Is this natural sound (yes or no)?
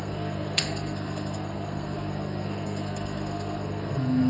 no